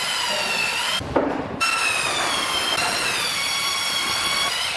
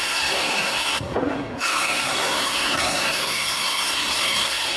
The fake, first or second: second